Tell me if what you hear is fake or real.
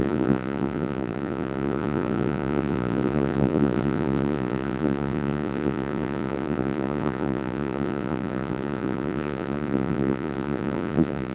fake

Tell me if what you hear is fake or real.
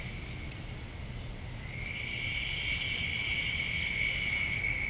real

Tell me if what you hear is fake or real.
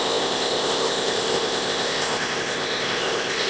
fake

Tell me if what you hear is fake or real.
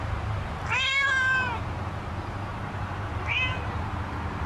fake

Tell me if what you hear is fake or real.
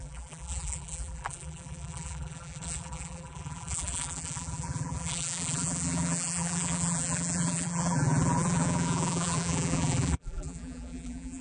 fake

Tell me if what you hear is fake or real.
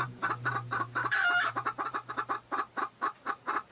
fake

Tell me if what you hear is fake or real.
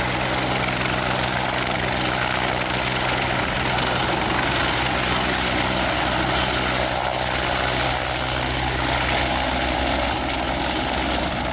real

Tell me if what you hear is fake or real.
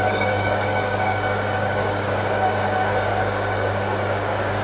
fake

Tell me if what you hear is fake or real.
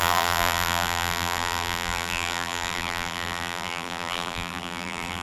fake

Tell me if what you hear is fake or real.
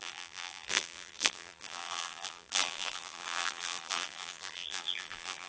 fake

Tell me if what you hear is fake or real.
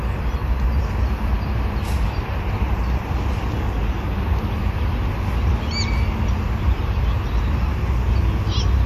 real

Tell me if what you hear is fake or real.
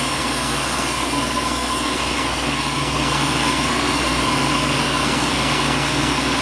fake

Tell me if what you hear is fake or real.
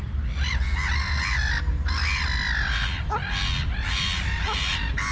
real